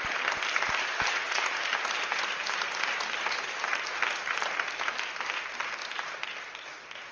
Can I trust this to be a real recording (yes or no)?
yes